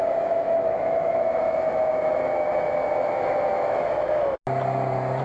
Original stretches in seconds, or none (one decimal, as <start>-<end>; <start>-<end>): 4.2-5.2